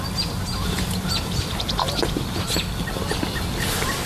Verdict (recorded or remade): recorded